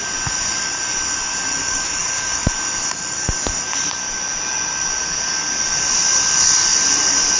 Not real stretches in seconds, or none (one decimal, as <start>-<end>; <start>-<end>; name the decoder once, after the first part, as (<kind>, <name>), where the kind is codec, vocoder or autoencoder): 1.6-2.4 (codec, DAC)